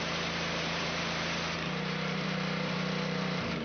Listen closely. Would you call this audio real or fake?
fake